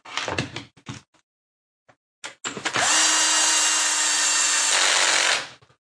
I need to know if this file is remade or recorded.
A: recorded